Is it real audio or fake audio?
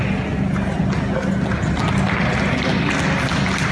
real